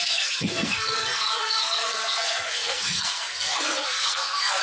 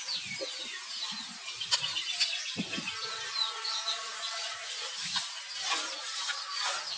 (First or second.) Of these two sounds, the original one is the second